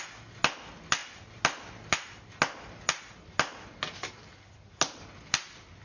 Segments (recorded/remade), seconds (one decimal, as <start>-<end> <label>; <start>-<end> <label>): 0.0-5.8 recorded

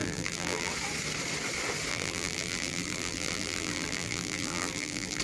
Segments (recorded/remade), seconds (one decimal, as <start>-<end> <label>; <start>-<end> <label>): 0.0-0.7 remade; 0.7-1.9 recorded; 1.9-5.2 remade

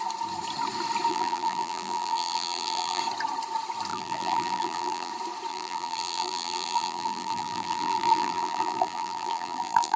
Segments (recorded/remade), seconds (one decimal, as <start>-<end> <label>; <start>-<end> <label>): 0.0-1.1 recorded; 1.1-3.0 remade; 3.0-3.9 recorded; 3.9-5.1 remade; 5.1-5.5 recorded; 5.5-10.0 remade